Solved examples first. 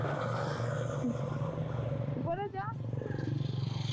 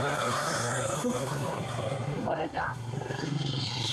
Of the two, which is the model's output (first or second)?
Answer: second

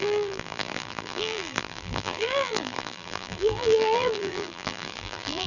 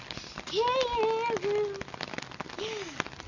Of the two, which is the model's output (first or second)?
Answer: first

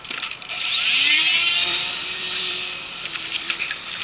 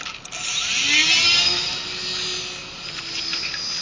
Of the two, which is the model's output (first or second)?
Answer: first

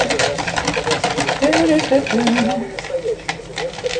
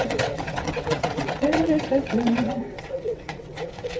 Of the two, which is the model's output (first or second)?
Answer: second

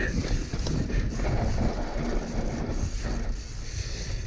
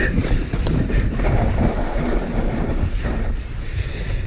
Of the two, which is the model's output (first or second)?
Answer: second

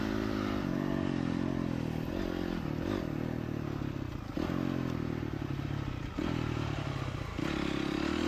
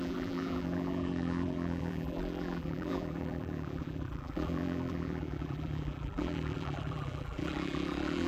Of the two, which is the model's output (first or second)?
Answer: second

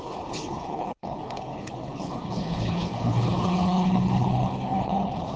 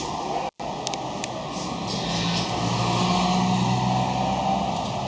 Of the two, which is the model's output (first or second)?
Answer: first